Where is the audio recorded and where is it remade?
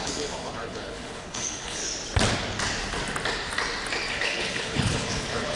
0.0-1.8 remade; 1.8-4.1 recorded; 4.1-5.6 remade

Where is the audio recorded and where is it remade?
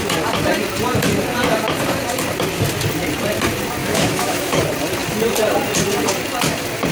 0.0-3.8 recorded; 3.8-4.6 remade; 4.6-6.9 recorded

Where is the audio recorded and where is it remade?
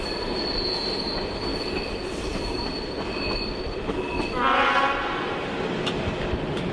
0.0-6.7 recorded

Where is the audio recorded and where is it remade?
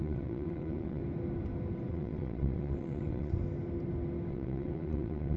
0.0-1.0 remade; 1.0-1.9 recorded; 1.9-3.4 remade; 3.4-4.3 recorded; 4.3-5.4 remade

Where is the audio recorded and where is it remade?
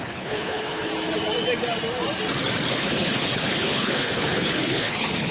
0.0-0.9 remade; 0.9-2.7 recorded; 2.7-5.3 remade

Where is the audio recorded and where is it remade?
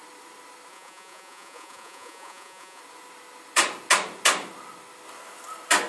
0.0-0.7 recorded; 0.7-2.8 remade; 2.8-5.9 recorded